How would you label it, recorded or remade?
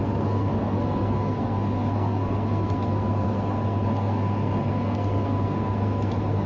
remade